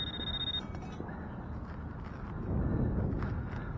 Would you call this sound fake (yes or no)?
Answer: no